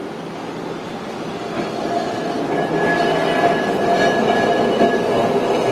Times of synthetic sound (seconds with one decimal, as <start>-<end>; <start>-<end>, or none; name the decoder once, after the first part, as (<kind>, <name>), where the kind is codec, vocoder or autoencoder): none